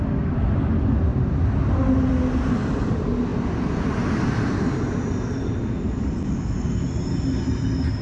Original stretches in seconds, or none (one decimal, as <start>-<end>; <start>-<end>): 0.0-8.0